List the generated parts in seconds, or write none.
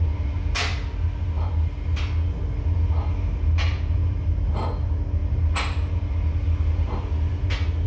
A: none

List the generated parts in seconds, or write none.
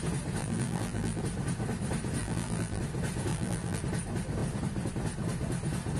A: 0.4-1.2 (vocoder, BigVGAN v2); 2.2-2.8; 3.3-3.8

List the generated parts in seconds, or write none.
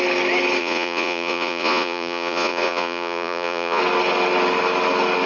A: 0.6-3.8 (vocoder, Vocos)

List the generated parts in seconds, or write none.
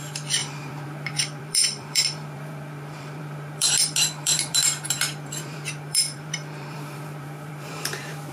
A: 0.0-8.3 (vocoder, BigVGAN v2)